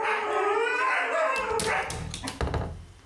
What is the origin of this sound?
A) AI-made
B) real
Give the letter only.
B